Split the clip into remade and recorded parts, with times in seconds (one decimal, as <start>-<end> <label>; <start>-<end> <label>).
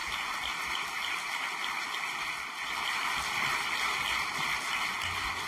0.0-5.5 recorded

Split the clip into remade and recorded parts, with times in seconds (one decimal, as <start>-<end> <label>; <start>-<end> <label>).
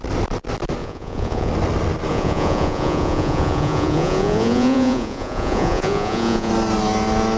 0.0-0.8 recorded; 0.8-1.5 remade; 1.5-2.1 recorded; 2.1-6.5 remade; 6.5-7.4 recorded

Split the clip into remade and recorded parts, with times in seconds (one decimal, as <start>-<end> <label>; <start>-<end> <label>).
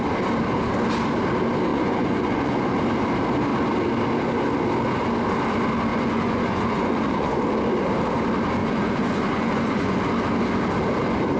0.0-1.7 recorded; 1.7-2.7 remade; 2.7-5.9 recorded; 5.9-7.4 remade; 7.4-8.6 recorded; 8.6-10.0 remade; 10.0-11.4 recorded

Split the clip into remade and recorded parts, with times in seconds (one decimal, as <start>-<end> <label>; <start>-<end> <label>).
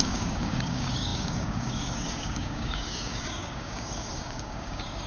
0.0-5.1 remade